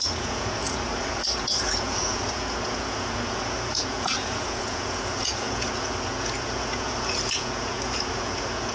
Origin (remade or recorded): remade